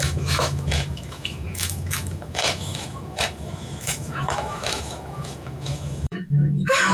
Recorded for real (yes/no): no